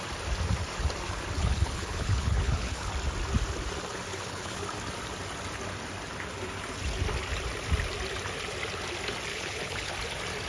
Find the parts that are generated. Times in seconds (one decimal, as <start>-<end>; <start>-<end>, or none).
1.4-2.9; 4.1-4.6; 9.3-9.9